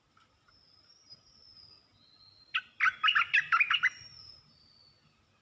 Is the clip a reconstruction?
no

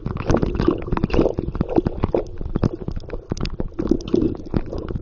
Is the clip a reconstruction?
no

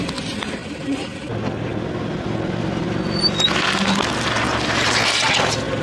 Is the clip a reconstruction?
no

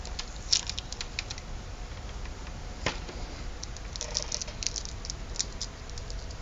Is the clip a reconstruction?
no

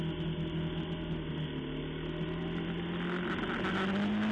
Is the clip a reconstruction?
no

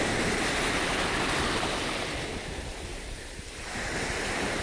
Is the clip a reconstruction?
no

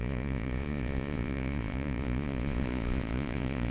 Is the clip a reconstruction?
yes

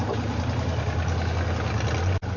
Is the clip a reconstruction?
no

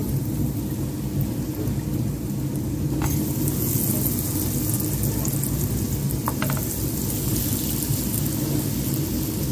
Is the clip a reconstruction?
no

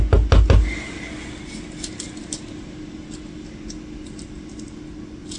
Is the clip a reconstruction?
no